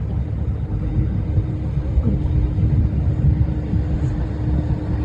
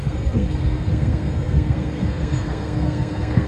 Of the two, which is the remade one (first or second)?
second